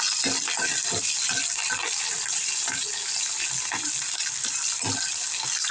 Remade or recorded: recorded